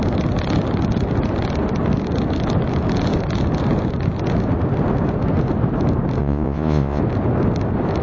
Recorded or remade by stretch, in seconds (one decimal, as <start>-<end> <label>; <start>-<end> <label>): 0.0-6.2 recorded; 6.2-7.0 remade; 7.0-8.0 recorded